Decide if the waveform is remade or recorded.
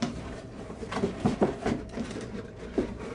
remade